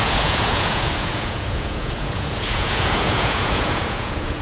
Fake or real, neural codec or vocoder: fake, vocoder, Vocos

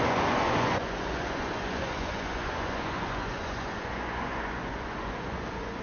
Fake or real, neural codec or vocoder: fake, vocoder, Vocos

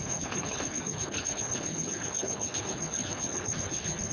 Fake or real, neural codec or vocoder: fake, codec, HILCodec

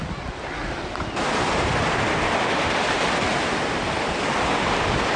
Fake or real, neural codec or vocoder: real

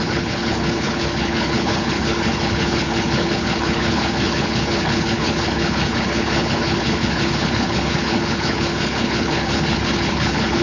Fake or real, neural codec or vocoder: fake, codec, HILCodec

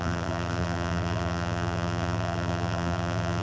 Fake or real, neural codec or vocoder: fake, vocoder, BigVGAN v2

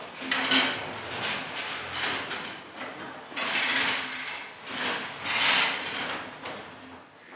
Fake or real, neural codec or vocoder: real